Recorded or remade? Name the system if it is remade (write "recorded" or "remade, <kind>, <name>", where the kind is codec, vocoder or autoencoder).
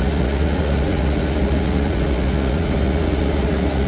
remade, vocoder, Vocos